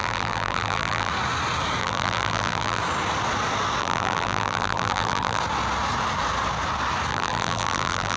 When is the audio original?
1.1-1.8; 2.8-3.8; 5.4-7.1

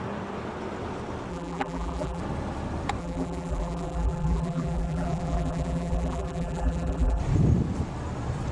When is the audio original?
0.0-1.3; 2.2-3.0; 7.2-8.5

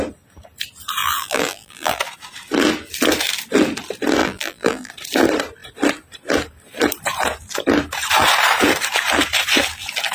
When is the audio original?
0.0-1.0; 2.0-4.2; 4.9-10.1

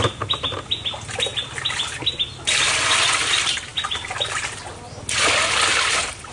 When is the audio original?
0.0-5.7

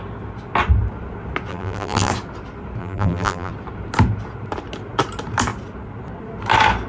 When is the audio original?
0.0-1.5; 2.1-2.8; 3.5-6.9

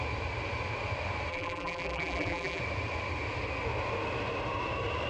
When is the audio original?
0.0-1.3; 2.6-5.1

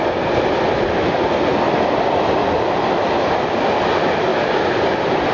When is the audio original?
1.5-2.9; 4.3-4.8

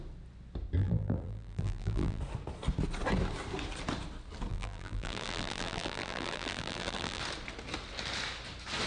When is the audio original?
0.0-0.8; 2.2-4.5; 7.2-8.9